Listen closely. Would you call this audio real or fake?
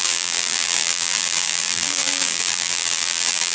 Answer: fake